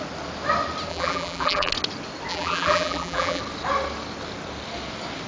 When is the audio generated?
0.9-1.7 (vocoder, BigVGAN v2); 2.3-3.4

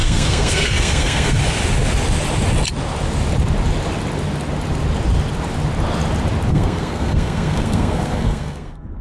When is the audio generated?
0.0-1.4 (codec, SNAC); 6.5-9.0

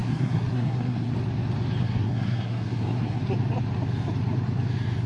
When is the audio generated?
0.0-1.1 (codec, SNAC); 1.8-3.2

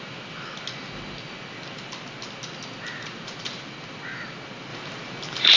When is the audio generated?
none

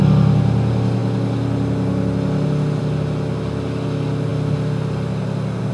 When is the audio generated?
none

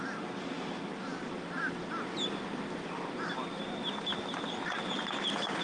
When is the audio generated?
none